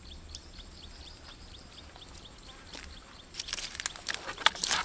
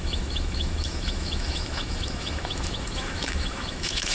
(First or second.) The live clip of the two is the first